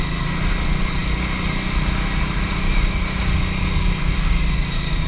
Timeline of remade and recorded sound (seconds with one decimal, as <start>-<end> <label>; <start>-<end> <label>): 0.0-5.1 recorded